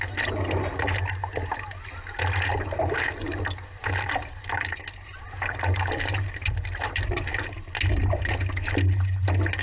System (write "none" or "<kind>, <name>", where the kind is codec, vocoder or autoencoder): none